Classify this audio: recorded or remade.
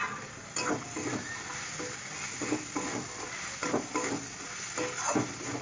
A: recorded